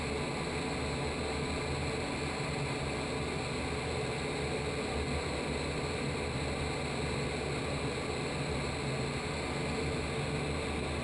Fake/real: real